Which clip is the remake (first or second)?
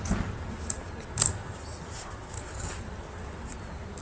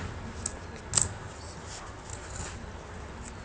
first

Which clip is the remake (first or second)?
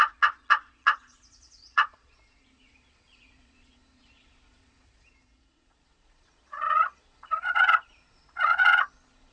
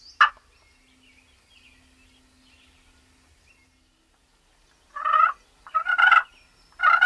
first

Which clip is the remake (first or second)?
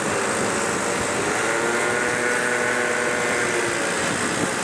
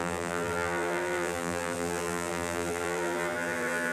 second